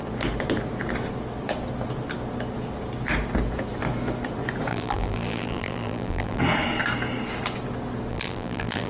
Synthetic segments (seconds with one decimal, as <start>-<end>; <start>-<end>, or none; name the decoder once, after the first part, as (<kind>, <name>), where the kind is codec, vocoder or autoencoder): 4.7-6.4 (vocoder, BigVGAN v2); 8.1-8.9